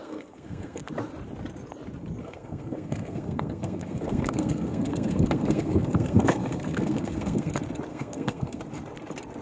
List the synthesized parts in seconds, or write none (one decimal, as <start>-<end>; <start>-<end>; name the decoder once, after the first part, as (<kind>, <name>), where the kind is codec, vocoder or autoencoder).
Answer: 0.0-0.8 (codec, SNAC); 2.2-7.5; 7.9-8.6